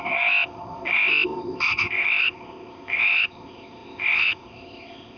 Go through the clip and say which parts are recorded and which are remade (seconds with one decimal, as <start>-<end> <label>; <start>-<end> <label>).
0.0-5.2 remade